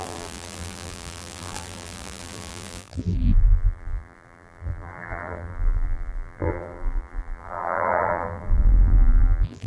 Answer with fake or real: fake